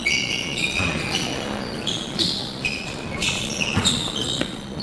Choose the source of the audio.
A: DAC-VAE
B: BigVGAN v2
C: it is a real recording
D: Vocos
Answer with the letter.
D